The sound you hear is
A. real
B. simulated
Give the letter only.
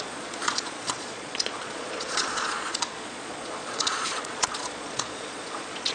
B